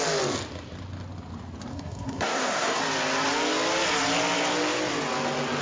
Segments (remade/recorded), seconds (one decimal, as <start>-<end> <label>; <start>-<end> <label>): 0.0-1.7 recorded; 1.7-2.8 remade; 2.8-5.6 recorded